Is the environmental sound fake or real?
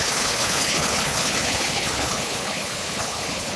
fake